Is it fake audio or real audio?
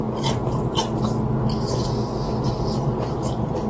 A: real